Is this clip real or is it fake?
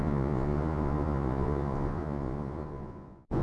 fake